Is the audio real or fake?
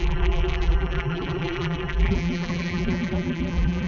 fake